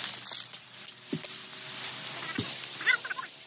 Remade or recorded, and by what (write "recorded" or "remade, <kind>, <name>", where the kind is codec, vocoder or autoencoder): recorded